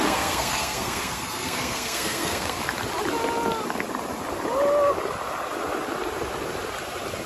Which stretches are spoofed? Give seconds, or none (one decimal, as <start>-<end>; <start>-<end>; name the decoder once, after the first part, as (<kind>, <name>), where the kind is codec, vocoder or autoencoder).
0.0-2.6 (codec, SNAC)